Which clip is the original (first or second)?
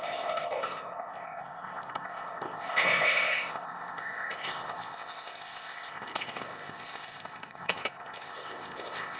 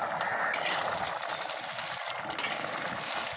second